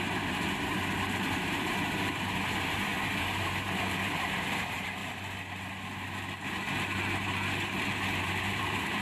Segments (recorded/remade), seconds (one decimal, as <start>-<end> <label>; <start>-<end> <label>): 0.0-5.0 remade; 5.0-8.2 recorded; 8.2-9.0 remade